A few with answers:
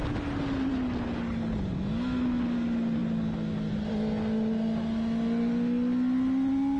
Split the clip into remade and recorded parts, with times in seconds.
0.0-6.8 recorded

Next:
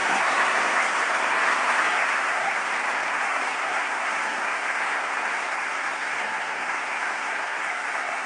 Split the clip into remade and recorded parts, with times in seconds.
0.0-2.7 remade; 2.7-3.1 recorded; 3.1-8.3 remade

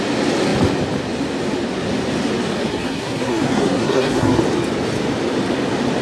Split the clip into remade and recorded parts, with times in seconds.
0.0-2.6 recorded; 2.6-4.4 remade; 4.4-6.0 recorded

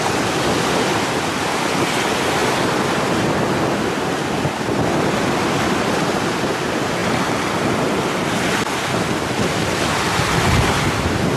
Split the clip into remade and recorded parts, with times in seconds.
0.0-11.4 recorded